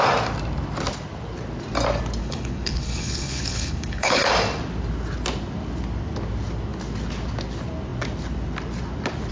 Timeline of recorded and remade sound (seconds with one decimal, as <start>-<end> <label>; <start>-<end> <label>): 0.0-2.2 recorded; 2.2-4.3 remade; 4.3-9.3 recorded